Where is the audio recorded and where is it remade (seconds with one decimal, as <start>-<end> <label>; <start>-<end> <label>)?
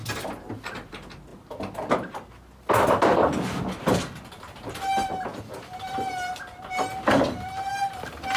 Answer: 0.0-8.4 recorded